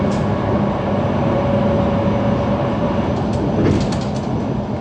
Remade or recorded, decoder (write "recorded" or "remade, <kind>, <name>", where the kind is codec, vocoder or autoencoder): recorded